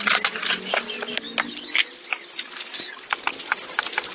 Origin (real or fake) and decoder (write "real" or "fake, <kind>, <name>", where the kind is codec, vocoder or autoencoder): real